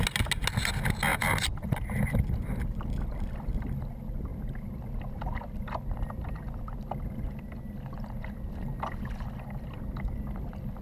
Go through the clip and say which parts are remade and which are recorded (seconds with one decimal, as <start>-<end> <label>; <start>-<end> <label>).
0.0-1.1 recorded; 1.1-3.8 remade; 3.8-10.8 recorded